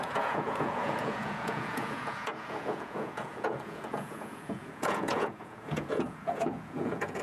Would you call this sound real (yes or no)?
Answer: no